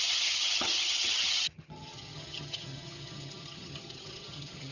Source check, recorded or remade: remade